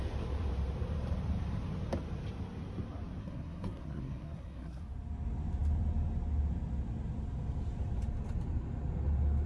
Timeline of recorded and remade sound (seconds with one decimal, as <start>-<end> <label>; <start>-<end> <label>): 0.0-3.2 recorded; 3.2-4.8 remade; 4.8-9.5 recorded